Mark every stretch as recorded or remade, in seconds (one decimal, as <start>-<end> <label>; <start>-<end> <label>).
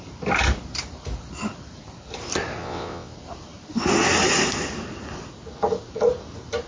0.0-2.6 recorded; 2.6-3.1 remade; 3.1-6.7 recorded